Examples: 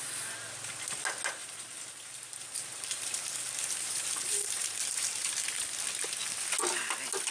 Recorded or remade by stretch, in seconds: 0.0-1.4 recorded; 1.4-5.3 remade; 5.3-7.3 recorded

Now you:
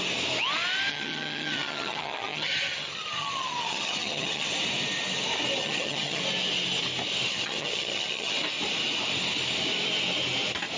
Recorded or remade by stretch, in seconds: 0.0-0.9 recorded; 0.9-4.5 remade; 4.5-5.6 recorded; 5.6-6.2 remade; 6.2-7.3 recorded; 7.3-8.3 remade; 8.3-10.8 recorded

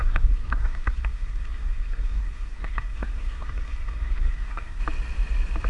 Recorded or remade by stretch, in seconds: 0.0-4.8 remade; 4.8-5.7 recorded

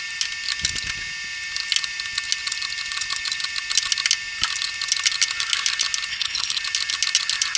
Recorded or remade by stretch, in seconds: 0.0-6.1 recorded; 6.1-6.6 remade; 6.6-7.6 recorded

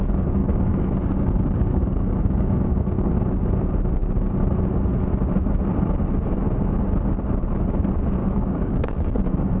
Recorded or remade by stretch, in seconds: 0.0-0.4 recorded; 0.4-3.1 remade; 3.1-8.2 recorded; 8.2-9.6 remade